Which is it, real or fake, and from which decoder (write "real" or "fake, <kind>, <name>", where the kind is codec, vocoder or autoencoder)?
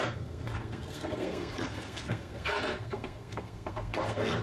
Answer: fake, codec, SNAC